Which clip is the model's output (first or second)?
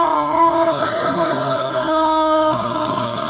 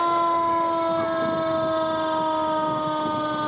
first